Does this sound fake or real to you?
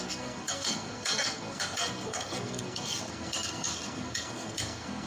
fake